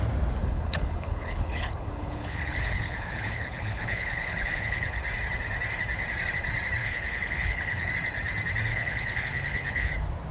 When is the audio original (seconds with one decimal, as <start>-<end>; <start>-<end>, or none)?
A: 0.0-0.4; 5.0-6.8; 7.9-8.7; 9.9-10.3